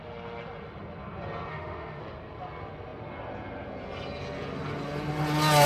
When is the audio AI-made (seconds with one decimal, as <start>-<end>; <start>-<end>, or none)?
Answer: 1.5-2.0